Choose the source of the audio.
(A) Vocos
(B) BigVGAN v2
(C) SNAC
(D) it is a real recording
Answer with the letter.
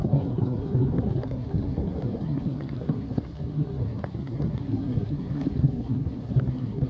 C